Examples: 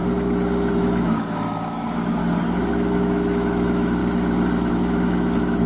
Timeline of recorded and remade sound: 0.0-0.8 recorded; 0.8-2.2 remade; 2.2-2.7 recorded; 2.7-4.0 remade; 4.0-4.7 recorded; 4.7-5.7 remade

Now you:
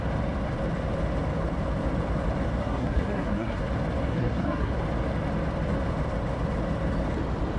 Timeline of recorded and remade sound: 0.0-2.6 recorded; 2.6-3.6 remade; 3.6-4.1 recorded; 4.1-4.7 remade; 4.7-7.6 recorded

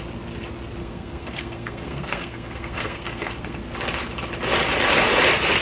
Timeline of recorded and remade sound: 0.0-0.8 recorded; 0.8-3.6 remade; 3.6-5.6 recorded